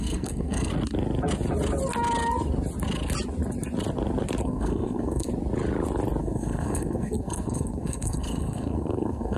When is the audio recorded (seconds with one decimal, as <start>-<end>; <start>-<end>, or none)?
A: 0.7-4.4; 5.3-6.2